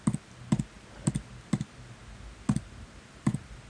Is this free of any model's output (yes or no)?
yes